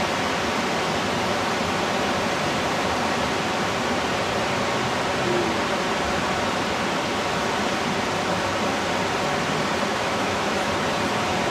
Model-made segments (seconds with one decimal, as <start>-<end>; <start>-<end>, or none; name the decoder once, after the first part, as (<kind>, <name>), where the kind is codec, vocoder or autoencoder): 9.9-10.7 (autoencoder, DAC-VAE)